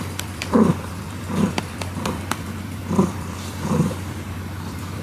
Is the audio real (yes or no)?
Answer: no